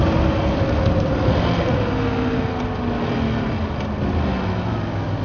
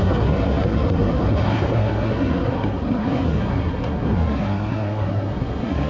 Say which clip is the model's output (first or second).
second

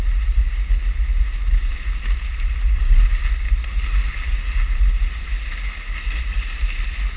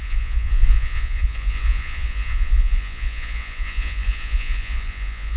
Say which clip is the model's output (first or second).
second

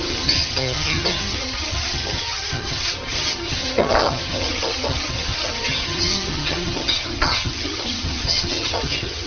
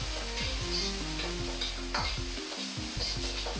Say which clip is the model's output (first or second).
first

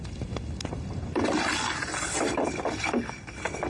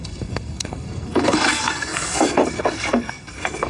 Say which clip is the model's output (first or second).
second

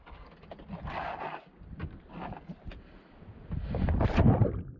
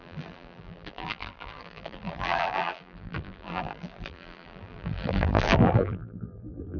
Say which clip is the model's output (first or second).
second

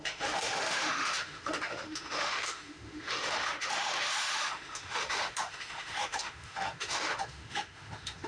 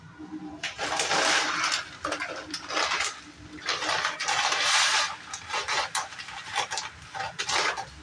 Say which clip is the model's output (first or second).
first